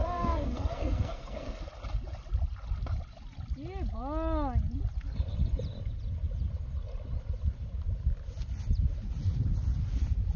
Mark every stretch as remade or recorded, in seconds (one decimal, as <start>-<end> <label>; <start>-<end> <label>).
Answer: 0.0-1.6 remade; 1.6-10.4 recorded